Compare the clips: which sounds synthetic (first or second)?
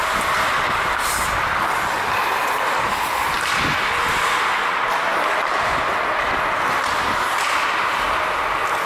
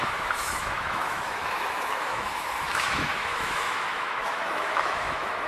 second